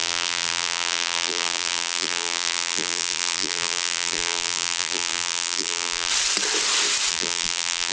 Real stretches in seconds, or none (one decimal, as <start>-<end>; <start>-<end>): 6.1-7.1